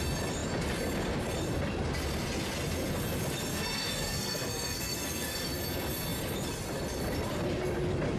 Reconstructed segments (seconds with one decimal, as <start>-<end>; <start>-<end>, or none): 3.5-5.5